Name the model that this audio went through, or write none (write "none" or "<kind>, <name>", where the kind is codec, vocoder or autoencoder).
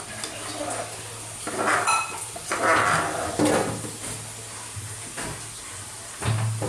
none